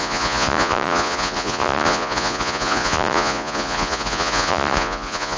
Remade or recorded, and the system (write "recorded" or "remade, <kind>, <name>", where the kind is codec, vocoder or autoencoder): remade, vocoder, Vocos